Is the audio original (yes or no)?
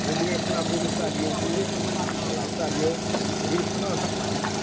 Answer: yes